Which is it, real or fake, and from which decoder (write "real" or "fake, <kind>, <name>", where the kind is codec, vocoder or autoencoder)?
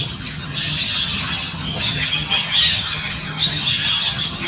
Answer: fake, vocoder, HiFi-GAN